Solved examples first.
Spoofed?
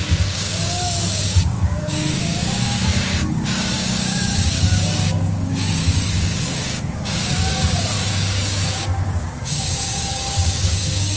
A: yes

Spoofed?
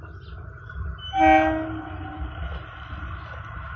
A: no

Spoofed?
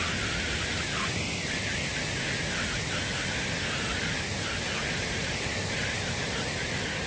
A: no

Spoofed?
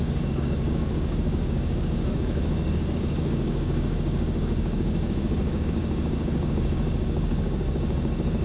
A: yes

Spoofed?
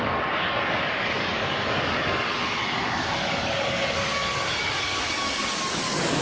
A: yes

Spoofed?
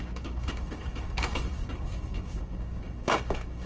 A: yes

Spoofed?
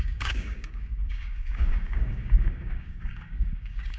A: yes